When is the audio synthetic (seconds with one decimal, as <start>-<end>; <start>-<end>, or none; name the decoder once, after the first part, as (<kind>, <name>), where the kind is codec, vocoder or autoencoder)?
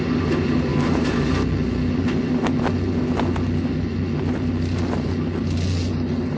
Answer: none